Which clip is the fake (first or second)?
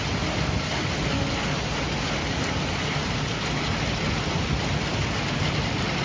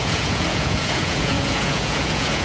second